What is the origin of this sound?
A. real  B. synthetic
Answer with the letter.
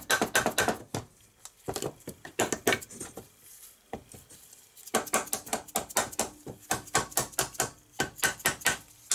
A